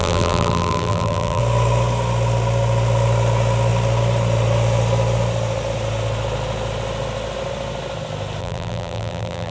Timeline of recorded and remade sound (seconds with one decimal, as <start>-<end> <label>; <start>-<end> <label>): 0.0-1.4 remade; 1.4-8.4 recorded; 8.4-9.5 remade